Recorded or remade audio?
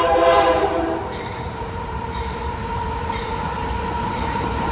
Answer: remade